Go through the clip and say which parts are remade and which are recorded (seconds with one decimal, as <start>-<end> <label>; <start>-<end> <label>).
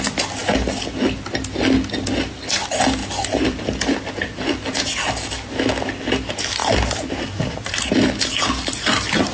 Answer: 0.0-3.0 recorded; 3.0-3.6 remade; 3.6-6.6 recorded; 6.6-8.3 remade; 8.3-9.3 recorded